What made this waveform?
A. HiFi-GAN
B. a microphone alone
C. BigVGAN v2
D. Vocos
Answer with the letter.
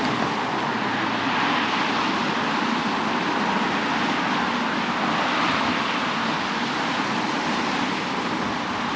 B